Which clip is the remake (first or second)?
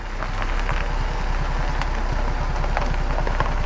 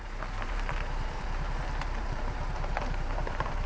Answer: second